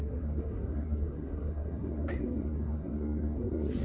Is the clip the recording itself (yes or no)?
no